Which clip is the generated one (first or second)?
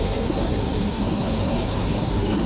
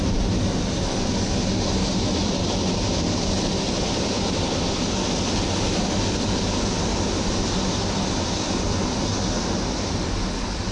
first